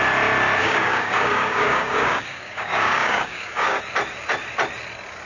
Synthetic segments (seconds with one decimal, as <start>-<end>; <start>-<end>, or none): 0.6-3.8